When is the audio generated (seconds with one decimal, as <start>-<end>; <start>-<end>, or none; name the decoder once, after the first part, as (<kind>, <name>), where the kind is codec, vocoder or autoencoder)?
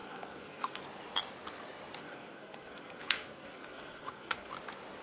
0.0-0.8 (codec, SNAC); 2.0-4.5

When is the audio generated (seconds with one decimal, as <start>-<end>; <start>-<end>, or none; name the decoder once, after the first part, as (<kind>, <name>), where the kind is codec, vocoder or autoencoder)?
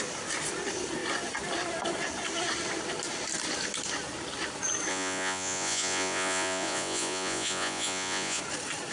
4.9-8.4 (vocoder, Vocos)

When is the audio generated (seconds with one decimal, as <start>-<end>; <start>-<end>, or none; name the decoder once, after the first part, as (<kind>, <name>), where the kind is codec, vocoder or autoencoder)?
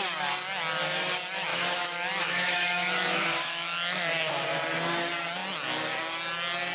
1.5-4.3 (autoencoder, DAC-VAE)